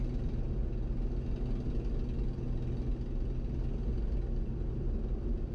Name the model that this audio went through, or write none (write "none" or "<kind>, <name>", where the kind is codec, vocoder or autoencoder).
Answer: none